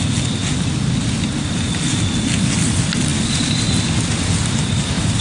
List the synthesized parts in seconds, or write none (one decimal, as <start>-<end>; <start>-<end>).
none